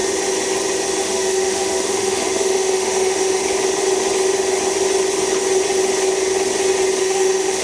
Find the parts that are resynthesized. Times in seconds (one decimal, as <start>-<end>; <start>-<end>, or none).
1.0-3.4; 7.0-7.6